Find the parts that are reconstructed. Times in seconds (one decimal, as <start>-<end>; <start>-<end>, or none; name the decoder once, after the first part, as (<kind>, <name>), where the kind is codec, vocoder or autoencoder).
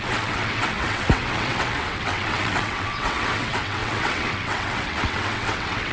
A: 0.0-5.9 (vocoder, WaveNeXt)